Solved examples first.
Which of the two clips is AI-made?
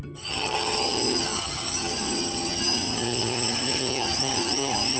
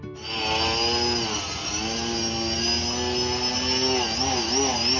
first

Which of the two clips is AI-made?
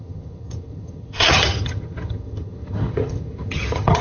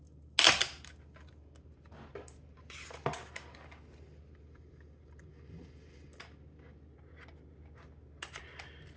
first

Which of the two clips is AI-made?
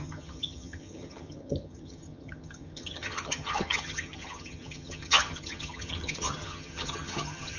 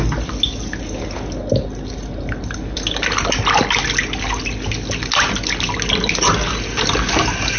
first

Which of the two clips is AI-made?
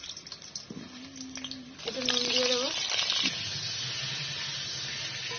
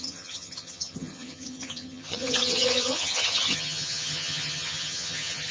second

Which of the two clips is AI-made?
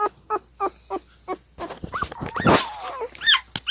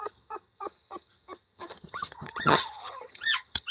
second